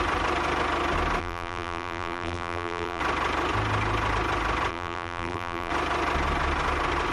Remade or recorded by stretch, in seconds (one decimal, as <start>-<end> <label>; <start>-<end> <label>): 0.0-1.2 recorded; 1.2-3.0 remade; 3.0-4.7 recorded; 4.7-5.7 remade; 5.7-7.1 recorded